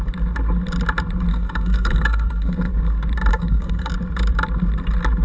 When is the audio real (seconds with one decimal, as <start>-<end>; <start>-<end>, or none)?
0.0-1.3; 2.7-3.3; 3.9-5.2